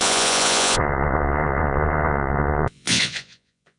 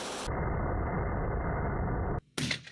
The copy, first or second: first